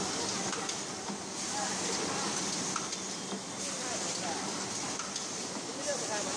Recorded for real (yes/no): yes